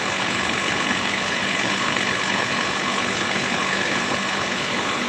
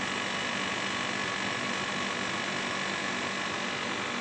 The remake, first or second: first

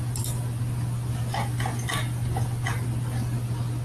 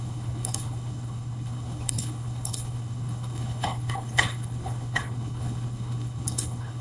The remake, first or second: second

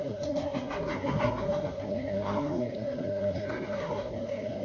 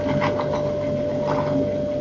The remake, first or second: first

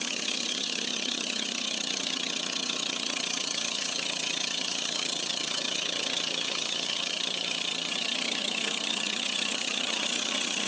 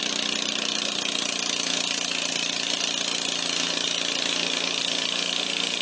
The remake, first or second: first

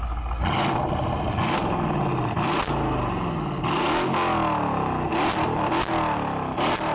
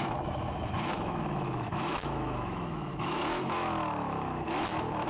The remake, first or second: second